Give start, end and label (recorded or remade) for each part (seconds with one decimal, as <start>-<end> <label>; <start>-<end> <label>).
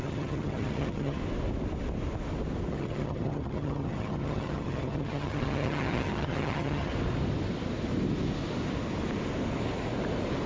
0.0-1.2 remade; 1.2-2.7 recorded; 2.7-6.9 remade; 6.9-10.5 recorded